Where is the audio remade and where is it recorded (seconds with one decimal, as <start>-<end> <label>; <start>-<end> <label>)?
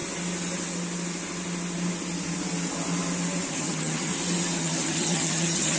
0.0-3.5 recorded; 3.5-4.1 remade; 4.1-4.6 recorded; 4.6-5.8 remade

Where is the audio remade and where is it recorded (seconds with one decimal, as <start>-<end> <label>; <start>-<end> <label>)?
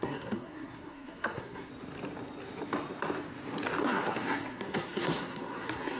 0.0-1.7 remade; 1.7-3.8 recorded; 3.8-6.0 remade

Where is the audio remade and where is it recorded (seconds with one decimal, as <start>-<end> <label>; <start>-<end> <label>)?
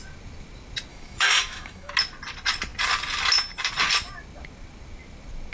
0.0-0.9 recorded; 0.9-1.9 remade; 1.9-5.5 recorded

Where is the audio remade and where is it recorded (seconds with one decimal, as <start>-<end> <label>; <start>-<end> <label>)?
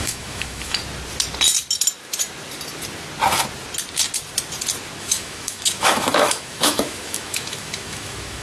0.0-0.8 remade; 0.8-5.0 recorded; 5.0-8.4 remade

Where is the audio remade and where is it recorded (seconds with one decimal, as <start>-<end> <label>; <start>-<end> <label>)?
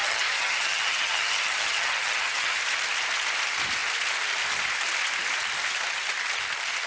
0.0-2.6 remade; 2.6-6.9 recorded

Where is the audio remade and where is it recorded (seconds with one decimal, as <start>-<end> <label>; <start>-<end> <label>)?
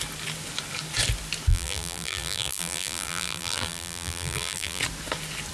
0.0-1.5 recorded; 1.5-4.8 remade; 4.8-5.5 recorded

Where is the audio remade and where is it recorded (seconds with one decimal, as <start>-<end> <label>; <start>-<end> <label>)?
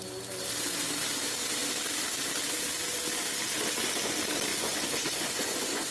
0.0-4.5 recorded; 4.5-5.9 remade